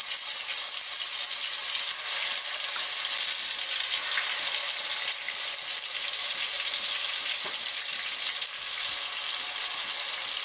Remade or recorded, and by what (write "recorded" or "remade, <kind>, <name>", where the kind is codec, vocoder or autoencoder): recorded